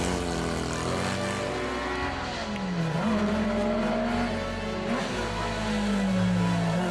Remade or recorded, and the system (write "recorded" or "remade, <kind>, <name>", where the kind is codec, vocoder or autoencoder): recorded